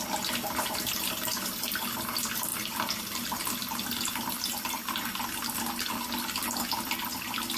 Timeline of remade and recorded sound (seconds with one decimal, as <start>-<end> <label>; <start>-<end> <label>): 0.0-7.6 recorded